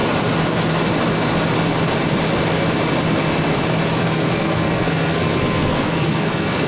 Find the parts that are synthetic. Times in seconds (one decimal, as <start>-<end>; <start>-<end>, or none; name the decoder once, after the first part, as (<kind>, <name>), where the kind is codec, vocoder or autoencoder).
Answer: 4.0-6.7 (codec, SNAC)